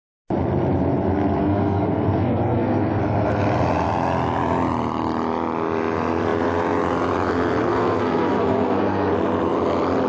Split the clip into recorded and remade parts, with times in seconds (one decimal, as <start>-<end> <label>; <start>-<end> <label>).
0.0-1.4 recorded; 1.4-3.0 remade; 3.0-7.7 recorded; 7.7-9.1 remade; 9.1-10.1 recorded